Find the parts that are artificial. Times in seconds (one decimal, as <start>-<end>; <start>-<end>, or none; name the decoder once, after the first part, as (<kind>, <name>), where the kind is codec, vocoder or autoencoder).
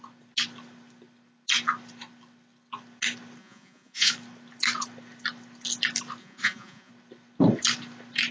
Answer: 3.4-4.1 (vocoder, Vocos); 6.2-6.9